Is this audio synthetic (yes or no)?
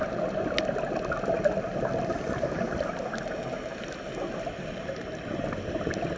no